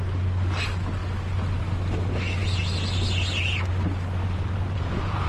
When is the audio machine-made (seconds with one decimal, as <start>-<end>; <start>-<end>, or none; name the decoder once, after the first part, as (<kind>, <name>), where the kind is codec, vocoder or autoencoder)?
4.2-5.3 (vocoder, BigVGAN v2)